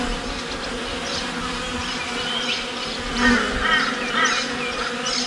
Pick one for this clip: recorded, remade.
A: recorded